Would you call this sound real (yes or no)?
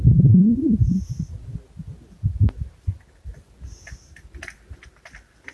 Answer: yes